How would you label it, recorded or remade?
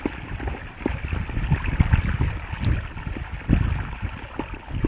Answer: recorded